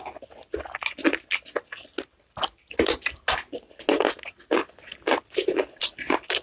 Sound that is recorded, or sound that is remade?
recorded